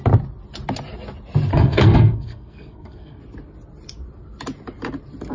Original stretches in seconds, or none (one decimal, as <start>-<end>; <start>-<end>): 0.0-1.5; 3.2-5.3